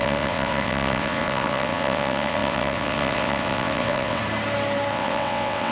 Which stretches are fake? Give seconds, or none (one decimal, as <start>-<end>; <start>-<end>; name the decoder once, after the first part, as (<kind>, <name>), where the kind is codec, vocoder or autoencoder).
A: 0.0-4.2 (vocoder, WaveNeXt); 4.9-5.7